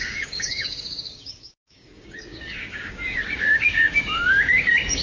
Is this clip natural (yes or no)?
no